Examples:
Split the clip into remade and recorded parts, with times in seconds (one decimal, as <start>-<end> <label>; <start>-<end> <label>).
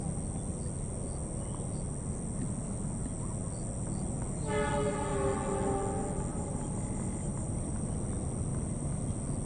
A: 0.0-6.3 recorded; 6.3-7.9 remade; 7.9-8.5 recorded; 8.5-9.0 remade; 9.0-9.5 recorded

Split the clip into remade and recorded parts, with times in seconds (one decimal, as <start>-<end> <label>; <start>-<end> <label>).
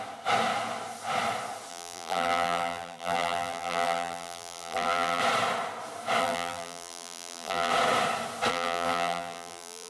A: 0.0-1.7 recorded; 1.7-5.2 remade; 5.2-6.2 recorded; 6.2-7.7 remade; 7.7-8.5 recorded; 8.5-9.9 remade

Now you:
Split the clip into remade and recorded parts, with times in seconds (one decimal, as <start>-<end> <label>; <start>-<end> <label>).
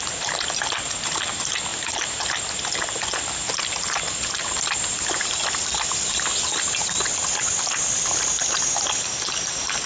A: 0.0-9.9 recorded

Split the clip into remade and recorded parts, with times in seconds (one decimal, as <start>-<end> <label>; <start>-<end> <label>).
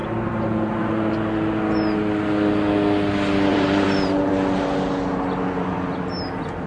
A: 0.0-0.9 remade; 0.9-3.5 recorded; 3.5-4.3 remade; 4.3-6.7 recorded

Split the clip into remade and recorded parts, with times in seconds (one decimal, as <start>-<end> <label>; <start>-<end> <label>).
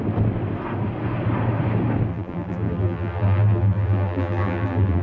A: 0.0-2.1 recorded; 2.1-5.0 remade